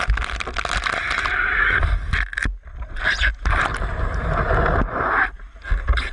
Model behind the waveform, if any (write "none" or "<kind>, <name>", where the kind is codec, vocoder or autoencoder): none